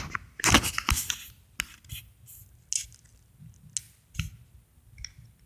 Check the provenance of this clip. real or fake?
real